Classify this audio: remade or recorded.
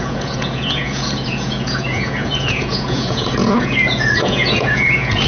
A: remade